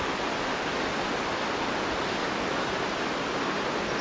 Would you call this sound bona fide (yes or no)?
yes